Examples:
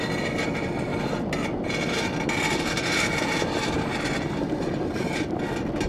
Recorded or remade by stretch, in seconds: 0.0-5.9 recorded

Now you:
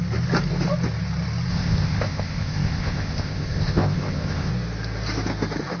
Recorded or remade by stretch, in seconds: 0.0-1.5 recorded; 1.5-4.5 remade; 4.5-5.8 recorded

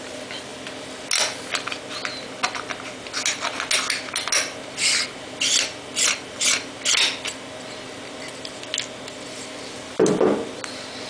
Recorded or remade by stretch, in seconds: 0.0-11.1 recorded

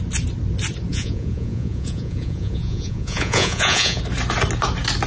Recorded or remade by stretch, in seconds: 0.0-0.9 recorded; 0.9-4.0 remade; 4.0-5.1 recorded

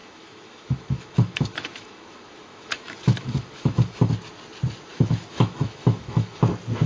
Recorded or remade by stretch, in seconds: 0.0-4.1 remade; 4.1-4.9 recorded; 4.9-6.4 remade; 6.4-6.9 recorded

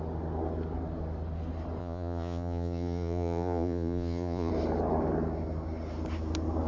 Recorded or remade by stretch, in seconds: 0.0-1.8 recorded; 1.8-4.5 remade; 4.5-6.7 recorded

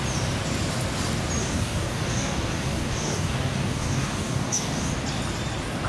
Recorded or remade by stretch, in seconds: 0.0-1.4 recorded; 1.4-4.9 remade; 4.9-5.9 recorded

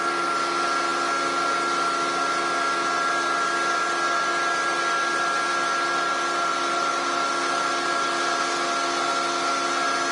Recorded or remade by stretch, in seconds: 0.0-10.1 recorded